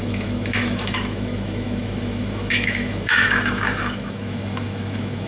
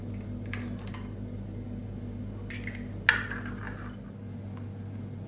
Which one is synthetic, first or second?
first